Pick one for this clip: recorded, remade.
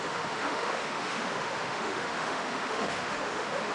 remade